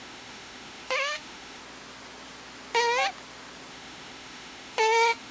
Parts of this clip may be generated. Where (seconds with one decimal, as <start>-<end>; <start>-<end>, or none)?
0.0-1.6; 3.7-5.3